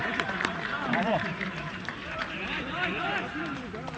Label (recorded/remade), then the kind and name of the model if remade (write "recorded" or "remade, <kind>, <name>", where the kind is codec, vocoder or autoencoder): remade, vocoder, BigVGAN v2